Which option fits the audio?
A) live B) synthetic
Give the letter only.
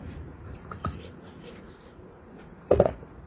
B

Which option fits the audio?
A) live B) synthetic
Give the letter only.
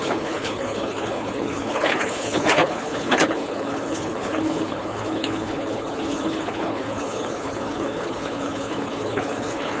B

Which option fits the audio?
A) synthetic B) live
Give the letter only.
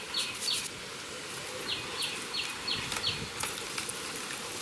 B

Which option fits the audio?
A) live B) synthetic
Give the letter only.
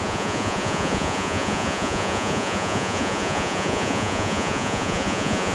B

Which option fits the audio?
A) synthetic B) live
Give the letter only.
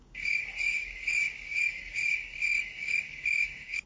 A